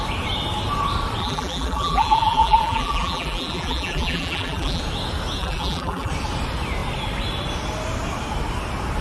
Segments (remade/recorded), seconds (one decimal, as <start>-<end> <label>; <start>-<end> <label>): 0.0-1.2 recorded; 1.2-4.8 remade; 4.8-5.4 recorded; 5.4-6.1 remade; 6.1-9.0 recorded